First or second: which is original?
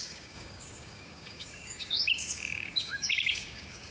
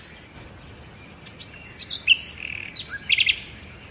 second